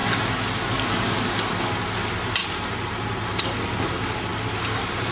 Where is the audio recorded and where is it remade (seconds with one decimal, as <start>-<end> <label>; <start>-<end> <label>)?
0.0-5.1 recorded